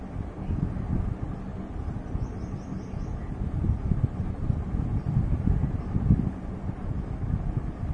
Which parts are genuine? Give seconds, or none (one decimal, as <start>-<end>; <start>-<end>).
0.0-7.9